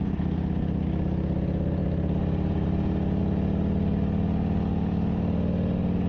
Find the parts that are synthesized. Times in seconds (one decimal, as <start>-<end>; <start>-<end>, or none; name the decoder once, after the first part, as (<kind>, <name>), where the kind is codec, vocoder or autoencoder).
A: none